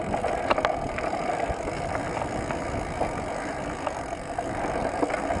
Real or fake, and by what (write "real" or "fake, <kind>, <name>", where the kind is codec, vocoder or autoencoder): real